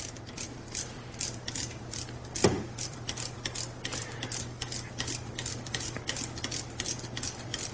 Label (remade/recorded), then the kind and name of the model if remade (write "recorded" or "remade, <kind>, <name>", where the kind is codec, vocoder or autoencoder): recorded